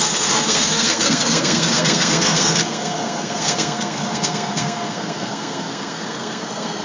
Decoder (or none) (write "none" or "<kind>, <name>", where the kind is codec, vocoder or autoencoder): codec, SNAC